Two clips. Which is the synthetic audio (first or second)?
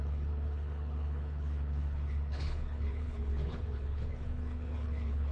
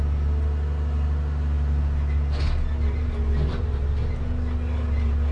first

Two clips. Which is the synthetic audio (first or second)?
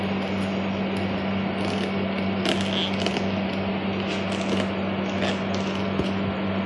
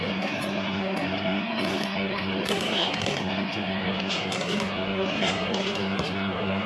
second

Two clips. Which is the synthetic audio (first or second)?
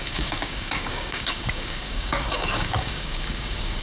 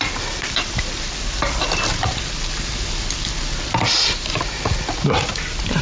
first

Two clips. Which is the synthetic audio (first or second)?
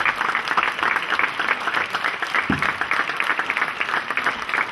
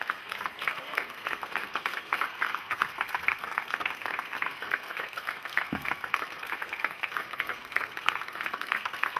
second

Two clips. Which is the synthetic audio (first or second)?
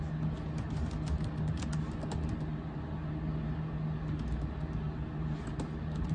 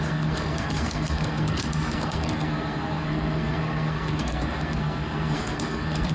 second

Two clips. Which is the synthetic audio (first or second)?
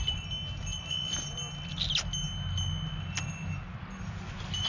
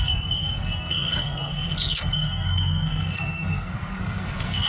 second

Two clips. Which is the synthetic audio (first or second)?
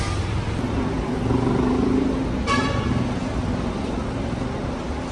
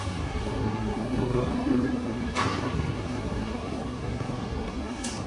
second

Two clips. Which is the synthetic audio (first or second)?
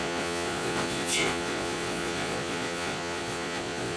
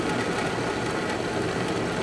first